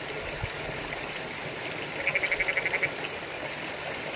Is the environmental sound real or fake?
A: real